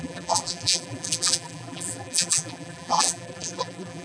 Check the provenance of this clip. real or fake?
fake